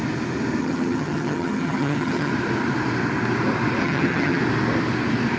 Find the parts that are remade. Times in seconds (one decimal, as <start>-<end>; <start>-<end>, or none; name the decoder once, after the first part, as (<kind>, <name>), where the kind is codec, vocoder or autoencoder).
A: 0.6-2.3 (vocoder, HiFi-GAN); 3.8-4.4